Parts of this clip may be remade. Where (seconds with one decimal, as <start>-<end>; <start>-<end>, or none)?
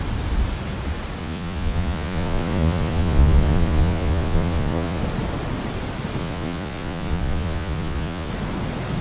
1.2-5.0; 6.2-8.3